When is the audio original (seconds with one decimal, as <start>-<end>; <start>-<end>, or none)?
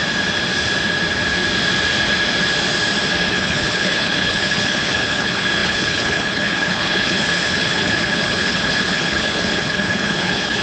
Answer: 0.0-3.3